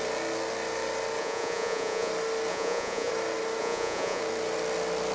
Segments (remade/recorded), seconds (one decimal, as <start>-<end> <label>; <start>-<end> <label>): 0.0-1.2 recorded; 1.2-2.1 remade; 2.1-2.5 recorded; 2.5-3.1 remade; 3.1-3.6 recorded; 3.6-4.2 remade; 4.2-5.1 recorded